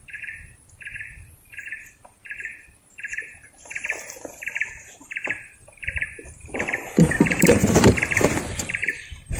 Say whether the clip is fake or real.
fake